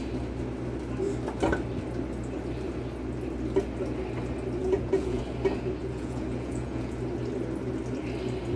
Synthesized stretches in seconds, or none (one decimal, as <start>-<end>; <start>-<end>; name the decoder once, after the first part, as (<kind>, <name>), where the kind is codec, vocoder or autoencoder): 4.6-5.2 (vocoder, Vocos); 5.8-7.0